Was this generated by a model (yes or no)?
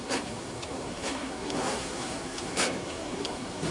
yes